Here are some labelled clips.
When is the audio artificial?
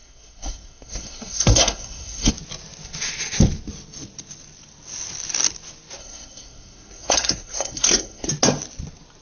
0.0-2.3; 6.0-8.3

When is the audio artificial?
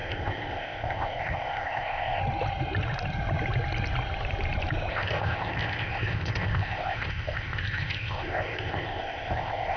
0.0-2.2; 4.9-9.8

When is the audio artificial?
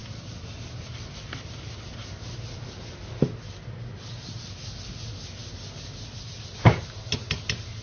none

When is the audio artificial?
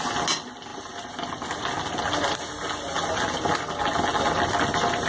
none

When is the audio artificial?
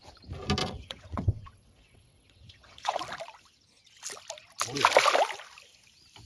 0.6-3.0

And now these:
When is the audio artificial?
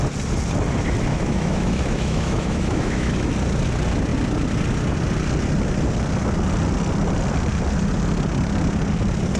1.1-3.3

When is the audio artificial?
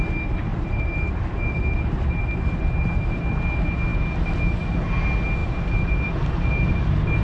0.5-2.2; 3.9-4.8; 5.4-6.7